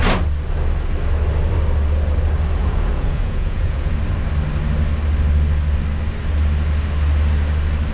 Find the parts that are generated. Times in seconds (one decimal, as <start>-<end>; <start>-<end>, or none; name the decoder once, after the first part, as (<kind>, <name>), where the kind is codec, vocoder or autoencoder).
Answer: 2.6-3.9 (vocoder, Vocos)